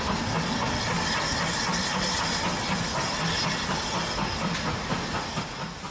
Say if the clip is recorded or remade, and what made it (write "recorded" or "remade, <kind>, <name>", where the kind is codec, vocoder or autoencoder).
recorded